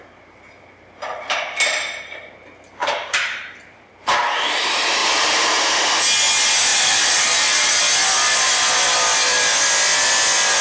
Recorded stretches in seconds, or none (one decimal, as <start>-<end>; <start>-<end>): 0.0-2.8; 3.9-5.0; 5.6-6.7; 7.8-10.6